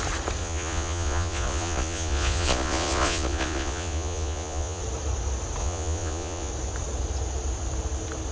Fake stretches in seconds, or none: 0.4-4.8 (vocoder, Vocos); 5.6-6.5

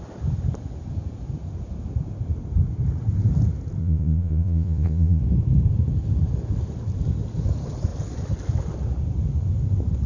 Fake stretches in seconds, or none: 3.8-5.2 (vocoder, Vocos)

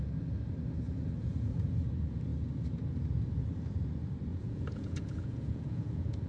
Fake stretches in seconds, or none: 1.2-1.8 (vocoder, Vocos); 4.3-6.3

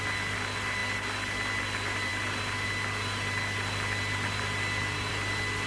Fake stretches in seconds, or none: none

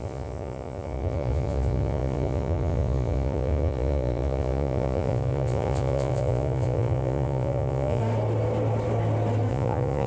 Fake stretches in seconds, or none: 0.0-8.0 (vocoder, Vocos); 9.5-10.1

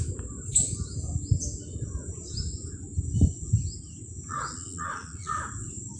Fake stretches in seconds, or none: 4.3-5.4 (vocoder, Vocos)